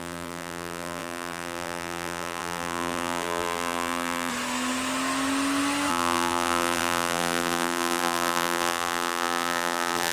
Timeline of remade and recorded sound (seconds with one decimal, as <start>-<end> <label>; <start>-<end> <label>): 0.0-4.3 remade; 4.3-5.9 recorded; 5.9-10.1 remade